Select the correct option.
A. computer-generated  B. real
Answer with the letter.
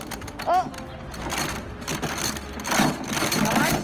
B